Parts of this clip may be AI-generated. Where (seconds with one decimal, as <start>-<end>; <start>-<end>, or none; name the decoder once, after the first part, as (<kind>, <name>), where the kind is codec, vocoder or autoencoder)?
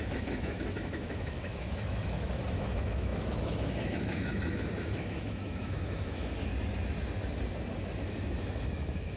0.0-6.5 (autoencoder, DAC-VAE); 7.8-9.2